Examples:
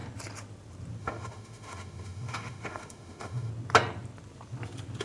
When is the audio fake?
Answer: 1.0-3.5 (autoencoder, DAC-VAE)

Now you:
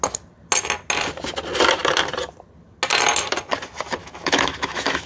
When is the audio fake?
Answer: 4.0-5.1 (autoencoder, DAC-VAE)

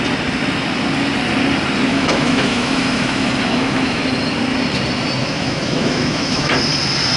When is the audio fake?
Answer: 1.9-4.0 (autoencoder, DAC-VAE); 5.2-6.5

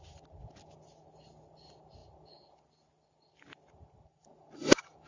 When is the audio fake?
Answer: none